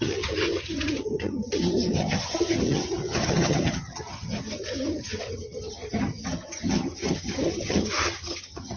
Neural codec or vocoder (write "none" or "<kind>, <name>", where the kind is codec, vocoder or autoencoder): vocoder, HiFi-GAN